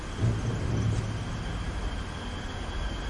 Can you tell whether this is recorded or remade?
recorded